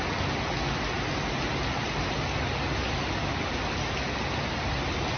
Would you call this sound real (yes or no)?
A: yes